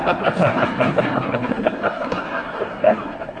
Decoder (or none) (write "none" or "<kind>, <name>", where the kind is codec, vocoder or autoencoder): codec, SNAC